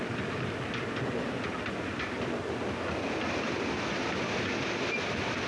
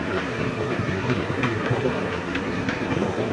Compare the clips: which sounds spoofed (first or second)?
second